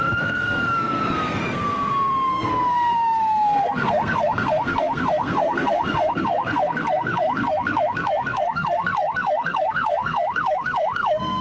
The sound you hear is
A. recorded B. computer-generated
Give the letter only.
B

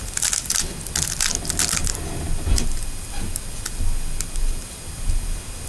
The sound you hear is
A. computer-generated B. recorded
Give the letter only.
B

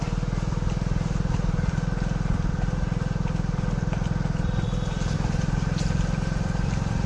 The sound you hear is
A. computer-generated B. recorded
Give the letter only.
B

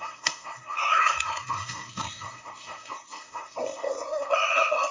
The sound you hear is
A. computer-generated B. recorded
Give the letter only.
A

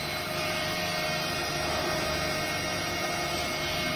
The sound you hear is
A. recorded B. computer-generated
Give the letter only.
A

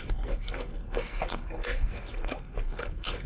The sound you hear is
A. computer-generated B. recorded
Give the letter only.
A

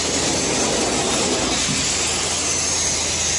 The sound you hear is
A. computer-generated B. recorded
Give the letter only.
B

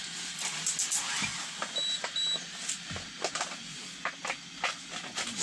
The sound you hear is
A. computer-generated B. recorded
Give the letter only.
B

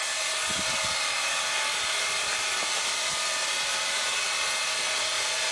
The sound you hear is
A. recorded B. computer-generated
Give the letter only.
A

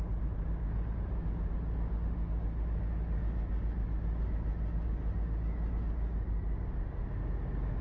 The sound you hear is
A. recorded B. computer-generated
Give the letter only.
A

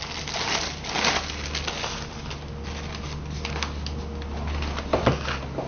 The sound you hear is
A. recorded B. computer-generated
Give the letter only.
A